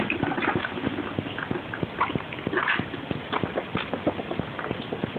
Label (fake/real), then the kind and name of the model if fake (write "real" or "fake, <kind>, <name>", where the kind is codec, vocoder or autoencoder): real